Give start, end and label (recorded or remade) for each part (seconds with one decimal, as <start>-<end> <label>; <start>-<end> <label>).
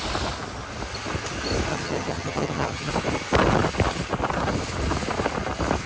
0.0-1.7 recorded; 1.7-2.9 remade; 2.9-5.9 recorded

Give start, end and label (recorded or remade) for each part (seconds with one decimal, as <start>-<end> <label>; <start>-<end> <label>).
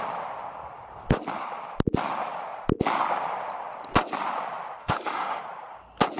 0.0-4.8 recorded; 4.8-5.4 remade; 5.4-6.2 recorded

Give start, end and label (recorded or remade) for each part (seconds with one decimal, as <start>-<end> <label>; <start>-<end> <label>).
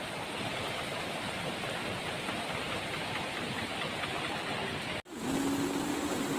0.0-3.7 remade; 3.7-5.8 recorded; 5.8-6.4 remade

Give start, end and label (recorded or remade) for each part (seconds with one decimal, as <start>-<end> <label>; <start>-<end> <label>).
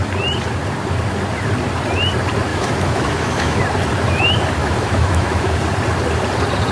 0.0-2.5 recorded; 2.5-3.6 remade; 3.6-4.6 recorded; 4.6-5.6 remade; 5.6-6.7 recorded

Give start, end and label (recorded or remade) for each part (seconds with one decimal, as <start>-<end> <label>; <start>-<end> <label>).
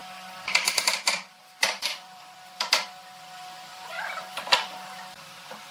0.0-5.7 remade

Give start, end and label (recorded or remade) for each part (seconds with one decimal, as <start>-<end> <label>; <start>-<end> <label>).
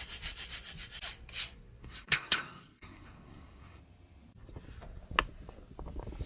0.0-1.8 recorded; 1.8-3.8 remade; 3.8-6.3 recorded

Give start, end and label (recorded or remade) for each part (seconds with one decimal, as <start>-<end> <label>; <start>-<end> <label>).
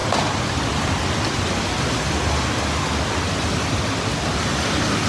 0.0-5.1 recorded